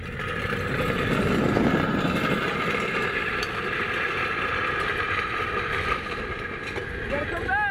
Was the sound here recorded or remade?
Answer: recorded